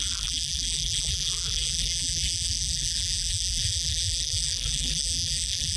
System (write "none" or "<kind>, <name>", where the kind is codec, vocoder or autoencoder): vocoder, BigVGAN v2